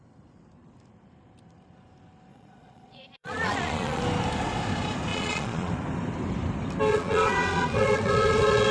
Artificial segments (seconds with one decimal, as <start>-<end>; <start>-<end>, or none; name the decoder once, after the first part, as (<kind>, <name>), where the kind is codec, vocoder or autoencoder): 2.3-4.0 (vocoder, Vocos); 5.1-5.7; 6.9-8.7